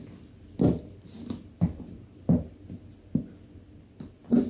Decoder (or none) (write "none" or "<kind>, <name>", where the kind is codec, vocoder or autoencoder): none